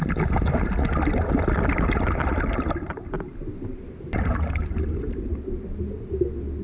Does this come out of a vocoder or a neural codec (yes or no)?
no